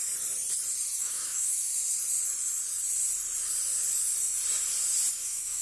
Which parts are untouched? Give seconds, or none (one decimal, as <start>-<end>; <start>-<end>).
0.0-1.0; 1.7-5.1